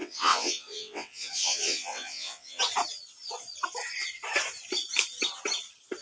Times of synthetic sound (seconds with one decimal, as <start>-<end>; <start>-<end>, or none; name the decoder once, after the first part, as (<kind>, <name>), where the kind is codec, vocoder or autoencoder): 0.0-2.6 (vocoder, WaveNeXt)

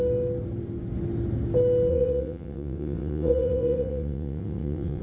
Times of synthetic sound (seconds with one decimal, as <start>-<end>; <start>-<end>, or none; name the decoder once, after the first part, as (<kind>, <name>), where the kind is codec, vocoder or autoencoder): 1.9-5.0 (vocoder, WaveNeXt)

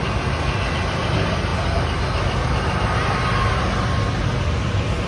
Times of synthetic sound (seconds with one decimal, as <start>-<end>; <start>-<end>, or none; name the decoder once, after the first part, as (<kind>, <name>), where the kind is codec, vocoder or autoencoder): none

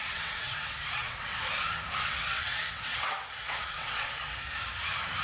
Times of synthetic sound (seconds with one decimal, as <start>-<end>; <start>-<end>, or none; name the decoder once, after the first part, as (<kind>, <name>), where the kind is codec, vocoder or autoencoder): 0.0-1.4 (vocoder, WaveNeXt); 2.0-4.3

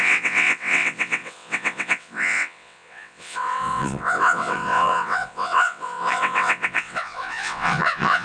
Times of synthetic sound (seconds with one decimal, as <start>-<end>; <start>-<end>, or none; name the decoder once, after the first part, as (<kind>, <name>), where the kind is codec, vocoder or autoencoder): 0.0-8.2 (vocoder, WaveNeXt)